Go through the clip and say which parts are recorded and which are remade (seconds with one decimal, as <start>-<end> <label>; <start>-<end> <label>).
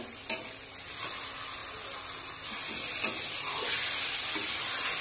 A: 0.0-5.0 recorded